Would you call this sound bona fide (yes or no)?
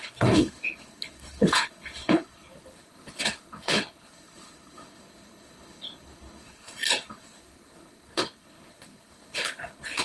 no